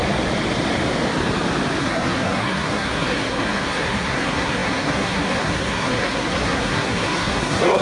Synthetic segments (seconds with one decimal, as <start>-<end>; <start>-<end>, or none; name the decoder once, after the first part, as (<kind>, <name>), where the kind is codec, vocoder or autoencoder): 1.8-7.8 (codec, SNAC)